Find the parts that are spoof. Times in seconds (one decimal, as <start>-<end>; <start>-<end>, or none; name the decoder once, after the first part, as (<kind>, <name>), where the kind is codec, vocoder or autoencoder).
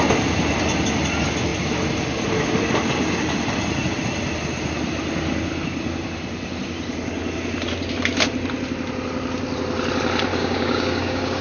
10.3-11.4 (codec, DAC)